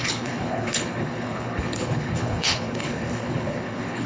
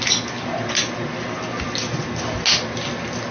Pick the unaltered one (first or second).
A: second